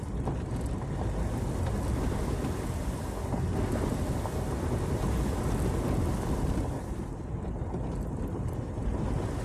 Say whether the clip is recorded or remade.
recorded